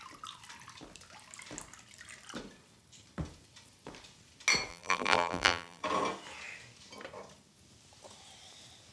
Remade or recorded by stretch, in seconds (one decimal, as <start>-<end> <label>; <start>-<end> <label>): 0.0-4.7 recorded; 4.7-5.8 remade; 5.8-8.9 recorded